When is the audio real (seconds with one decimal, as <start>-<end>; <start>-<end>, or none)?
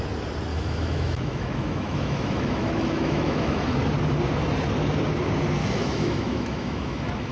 0.0-0.5; 3.8-5.6